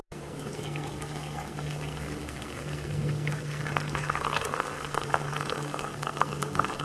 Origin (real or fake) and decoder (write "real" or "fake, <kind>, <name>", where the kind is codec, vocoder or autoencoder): fake, codec, SNAC